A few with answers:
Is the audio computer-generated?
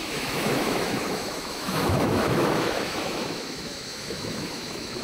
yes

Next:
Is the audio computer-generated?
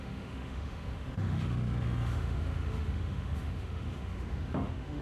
yes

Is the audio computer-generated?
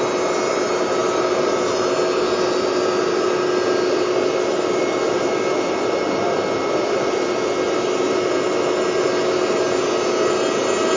no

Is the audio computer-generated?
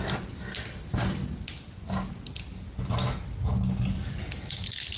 no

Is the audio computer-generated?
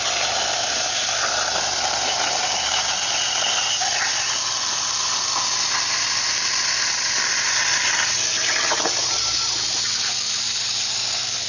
no